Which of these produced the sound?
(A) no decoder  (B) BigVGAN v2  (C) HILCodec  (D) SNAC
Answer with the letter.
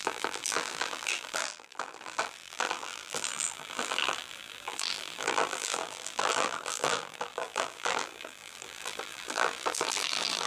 B